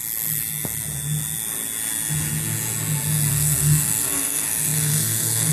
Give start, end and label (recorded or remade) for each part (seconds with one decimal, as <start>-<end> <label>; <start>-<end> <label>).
0.0-3.3 recorded; 3.3-5.5 remade